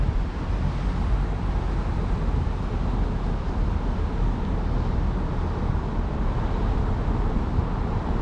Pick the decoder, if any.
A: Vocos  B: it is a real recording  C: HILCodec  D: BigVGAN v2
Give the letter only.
B